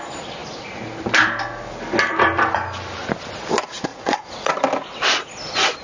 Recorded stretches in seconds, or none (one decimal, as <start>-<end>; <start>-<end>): 0.0-3.9; 4.5-5.8